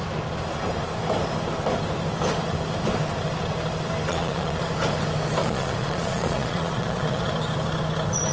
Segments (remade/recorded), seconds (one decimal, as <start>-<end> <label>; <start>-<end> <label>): 0.0-4.1 recorded; 4.1-4.7 remade; 4.7-5.4 recorded; 5.4-7.3 remade; 7.3-8.3 recorded